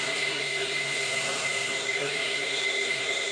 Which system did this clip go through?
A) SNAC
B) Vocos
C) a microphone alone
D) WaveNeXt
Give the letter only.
A